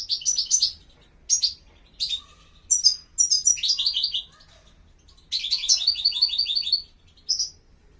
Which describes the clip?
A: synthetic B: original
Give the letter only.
B